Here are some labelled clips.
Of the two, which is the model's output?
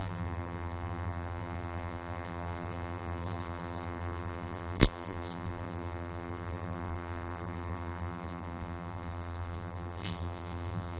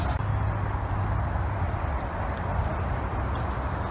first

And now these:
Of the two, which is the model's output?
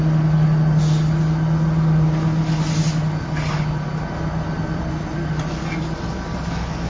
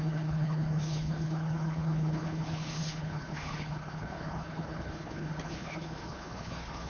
second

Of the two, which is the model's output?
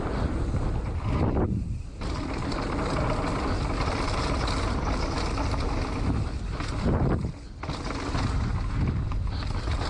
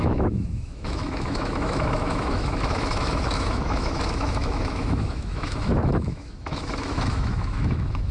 second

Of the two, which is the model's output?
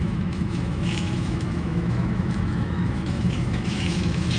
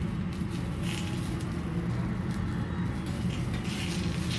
first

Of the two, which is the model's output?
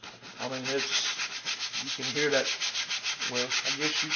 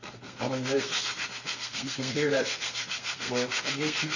second